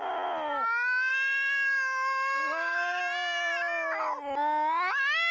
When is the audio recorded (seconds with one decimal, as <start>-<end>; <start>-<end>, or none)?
0.0-1.1; 3.0-5.3